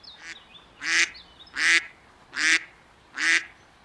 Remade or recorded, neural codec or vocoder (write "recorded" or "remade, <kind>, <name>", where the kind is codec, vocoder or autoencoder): recorded